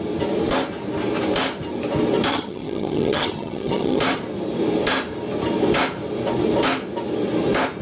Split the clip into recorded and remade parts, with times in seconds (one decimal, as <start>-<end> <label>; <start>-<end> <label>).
0.0-2.3 recorded; 2.3-4.0 remade; 4.0-7.8 recorded